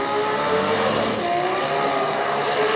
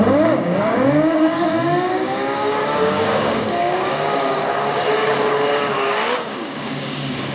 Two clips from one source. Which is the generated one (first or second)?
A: second